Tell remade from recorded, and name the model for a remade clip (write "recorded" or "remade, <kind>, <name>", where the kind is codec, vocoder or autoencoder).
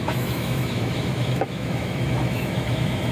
remade, autoencoder, DAC-VAE